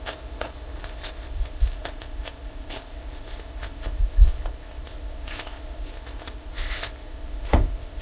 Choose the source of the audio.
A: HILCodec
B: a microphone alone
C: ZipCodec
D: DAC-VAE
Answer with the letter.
C